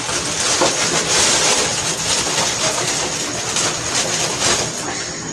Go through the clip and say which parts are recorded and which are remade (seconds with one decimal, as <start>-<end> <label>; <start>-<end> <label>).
0.0-5.3 recorded